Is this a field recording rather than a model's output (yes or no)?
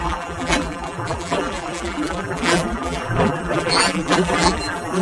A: no